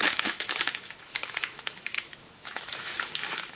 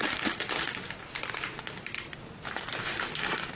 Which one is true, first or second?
second